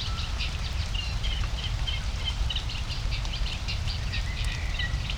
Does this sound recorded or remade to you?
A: remade